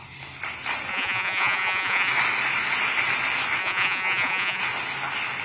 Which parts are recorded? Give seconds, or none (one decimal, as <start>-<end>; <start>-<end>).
0.0-0.9; 2.1-3.6; 4.6-5.4